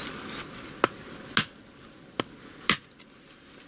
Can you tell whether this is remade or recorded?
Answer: recorded